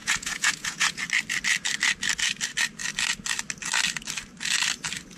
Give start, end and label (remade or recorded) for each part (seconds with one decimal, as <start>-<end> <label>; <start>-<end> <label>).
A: 0.0-1.0 remade; 1.0-5.2 recorded